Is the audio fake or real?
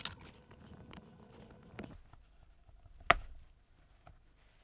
real